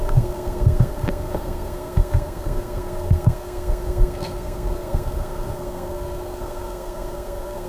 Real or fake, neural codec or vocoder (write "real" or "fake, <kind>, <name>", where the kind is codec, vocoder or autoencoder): fake, codec, SNAC